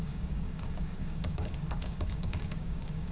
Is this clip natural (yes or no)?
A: no